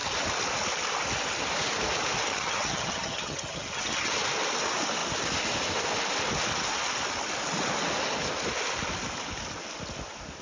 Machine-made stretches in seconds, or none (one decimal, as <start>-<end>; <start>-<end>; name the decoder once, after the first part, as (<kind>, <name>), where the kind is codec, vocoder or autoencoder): 2.3-4.1 (vocoder, HiFi-GAN)